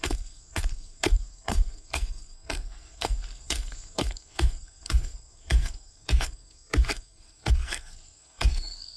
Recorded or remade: remade